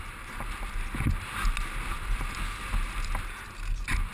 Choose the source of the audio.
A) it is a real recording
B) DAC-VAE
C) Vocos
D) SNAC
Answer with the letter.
A